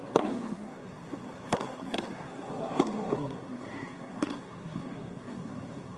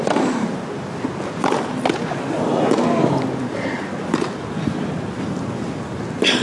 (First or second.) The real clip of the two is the second